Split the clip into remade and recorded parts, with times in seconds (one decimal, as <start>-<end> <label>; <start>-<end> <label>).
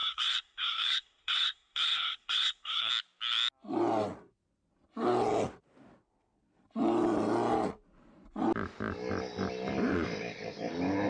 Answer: 0.0-2.9 remade; 2.9-11.1 recorded